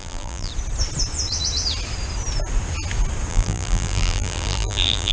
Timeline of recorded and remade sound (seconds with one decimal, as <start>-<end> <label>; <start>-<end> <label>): 0.0-0.5 remade; 0.5-3.3 recorded; 3.3-5.1 remade